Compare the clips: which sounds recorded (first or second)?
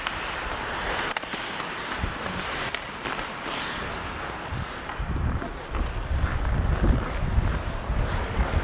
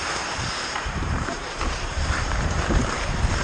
first